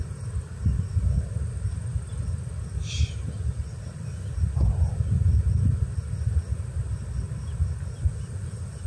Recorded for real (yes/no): yes